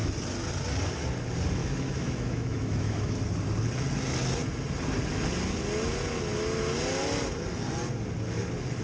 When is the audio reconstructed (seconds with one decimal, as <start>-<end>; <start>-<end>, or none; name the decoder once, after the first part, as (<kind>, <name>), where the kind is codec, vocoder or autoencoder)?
1.6-3.2 (autoencoder, DAC-VAE)